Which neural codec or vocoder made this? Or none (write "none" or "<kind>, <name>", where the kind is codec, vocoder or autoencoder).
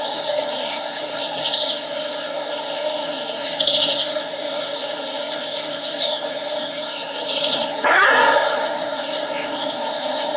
codec, SNAC